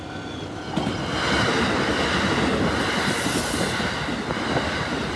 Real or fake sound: real